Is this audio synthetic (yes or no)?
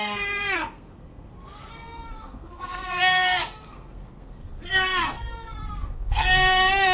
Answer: yes